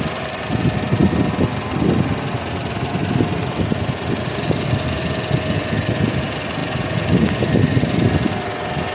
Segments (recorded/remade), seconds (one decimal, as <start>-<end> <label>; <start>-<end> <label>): 0.0-8.9 recorded